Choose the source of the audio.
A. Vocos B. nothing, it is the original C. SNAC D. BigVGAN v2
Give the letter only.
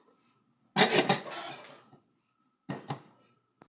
B